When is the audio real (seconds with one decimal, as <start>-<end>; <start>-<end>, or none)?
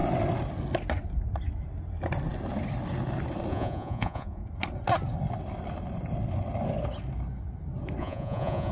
0.0-3.5; 4.4-8.0